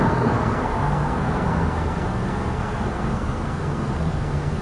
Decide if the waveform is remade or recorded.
remade